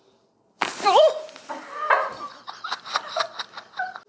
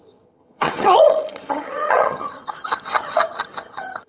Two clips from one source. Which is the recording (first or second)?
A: first